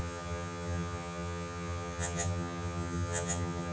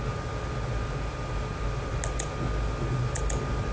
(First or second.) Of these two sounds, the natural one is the second